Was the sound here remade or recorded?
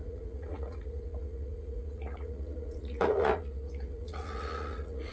remade